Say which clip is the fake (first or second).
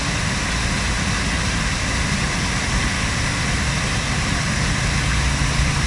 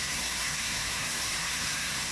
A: second